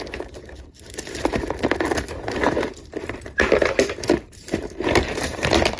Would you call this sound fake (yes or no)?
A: yes